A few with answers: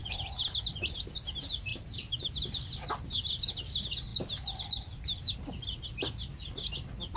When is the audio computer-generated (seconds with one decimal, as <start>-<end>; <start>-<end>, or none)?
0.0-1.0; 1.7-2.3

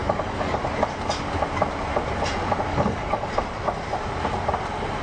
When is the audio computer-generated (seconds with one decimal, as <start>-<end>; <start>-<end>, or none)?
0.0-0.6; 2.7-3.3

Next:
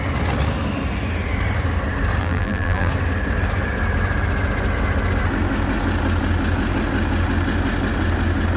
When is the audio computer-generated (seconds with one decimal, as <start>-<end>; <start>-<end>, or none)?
2.2-2.9

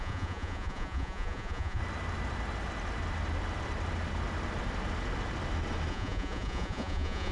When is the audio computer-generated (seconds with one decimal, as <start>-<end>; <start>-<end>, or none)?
0.0-1.8; 5.9-7.3

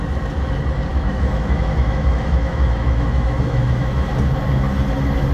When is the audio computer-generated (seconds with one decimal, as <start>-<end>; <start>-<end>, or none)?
0.9-4.1